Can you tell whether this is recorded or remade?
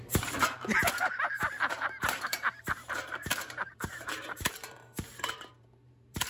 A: remade